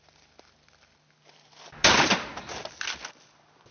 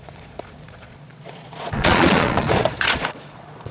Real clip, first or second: first